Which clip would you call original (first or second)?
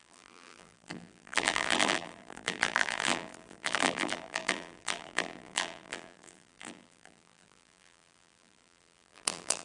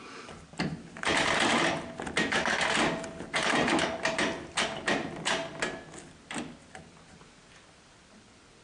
second